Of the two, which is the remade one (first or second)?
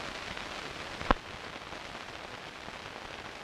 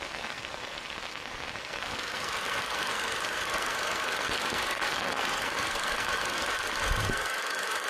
second